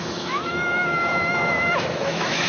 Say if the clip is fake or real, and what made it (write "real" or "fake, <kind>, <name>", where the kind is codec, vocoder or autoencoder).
fake, autoencoder, DAC-VAE